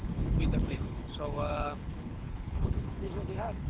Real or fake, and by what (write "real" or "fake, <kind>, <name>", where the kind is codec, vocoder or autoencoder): fake, codec, HILCodec